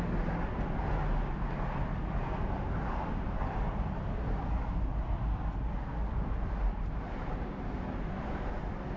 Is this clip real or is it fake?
real